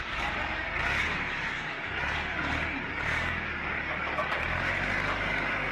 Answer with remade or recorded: remade